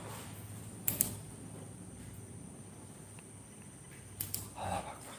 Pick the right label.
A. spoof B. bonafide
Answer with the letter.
B